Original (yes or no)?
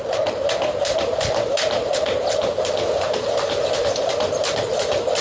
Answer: yes